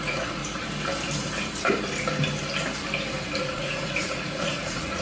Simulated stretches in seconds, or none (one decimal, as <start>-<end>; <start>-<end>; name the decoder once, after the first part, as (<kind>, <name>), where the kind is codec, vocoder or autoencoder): 0.0-0.4 (vocoder, Vocos); 3.4-5.0